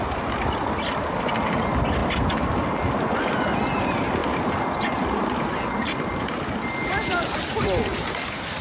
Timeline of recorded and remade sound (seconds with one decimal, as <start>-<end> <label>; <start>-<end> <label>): 0.0-8.6 recorded